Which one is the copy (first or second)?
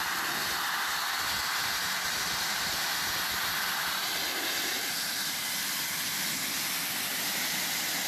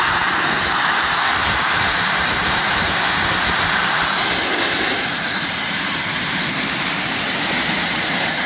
second